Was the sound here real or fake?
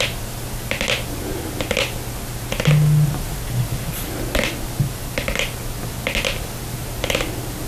real